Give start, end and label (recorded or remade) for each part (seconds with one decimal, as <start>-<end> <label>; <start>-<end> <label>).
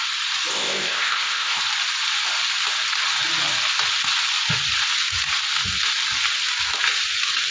0.0-0.5 recorded; 0.5-1.6 remade; 1.6-7.5 recorded